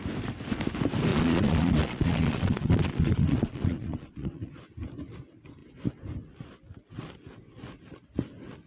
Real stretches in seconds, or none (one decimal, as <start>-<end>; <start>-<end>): 0.0-1.1; 4.5-8.7